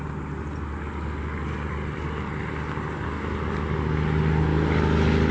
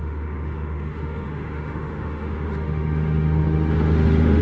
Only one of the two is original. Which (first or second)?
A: first